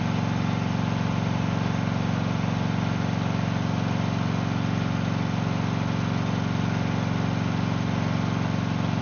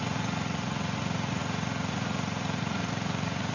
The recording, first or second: first